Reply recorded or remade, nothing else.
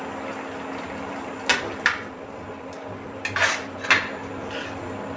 recorded